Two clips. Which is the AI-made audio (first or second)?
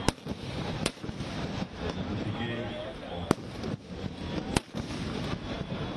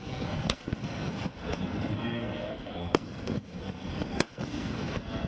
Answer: second